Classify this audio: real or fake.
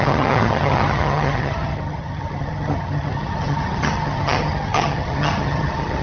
fake